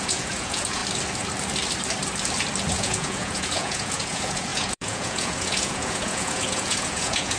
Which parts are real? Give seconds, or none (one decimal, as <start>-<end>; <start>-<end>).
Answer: 0.8-2.7